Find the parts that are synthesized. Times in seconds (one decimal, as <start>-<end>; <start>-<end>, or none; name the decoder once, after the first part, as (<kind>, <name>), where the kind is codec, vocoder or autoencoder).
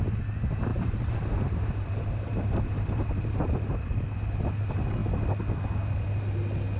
0.7-4.0 (vocoder, BigVGAN v2)